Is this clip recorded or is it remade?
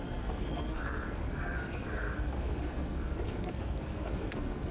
remade